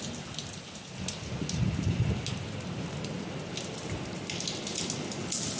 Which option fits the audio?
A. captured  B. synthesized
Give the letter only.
A